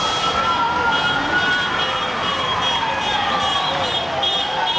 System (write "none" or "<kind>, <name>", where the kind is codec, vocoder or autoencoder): none